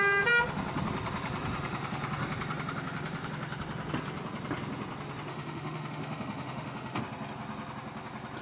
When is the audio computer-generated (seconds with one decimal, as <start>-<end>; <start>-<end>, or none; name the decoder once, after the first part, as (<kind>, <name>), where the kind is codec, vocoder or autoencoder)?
5.3-7.0 (autoencoder, DAC-VAE)